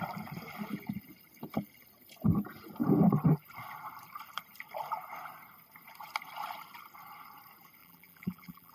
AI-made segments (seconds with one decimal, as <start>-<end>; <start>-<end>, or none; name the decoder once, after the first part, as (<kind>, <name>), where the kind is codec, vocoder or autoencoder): 7.8-8.7 (vocoder, BigVGAN v2)